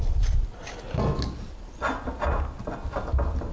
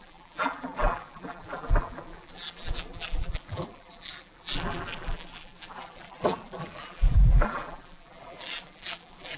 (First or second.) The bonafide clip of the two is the first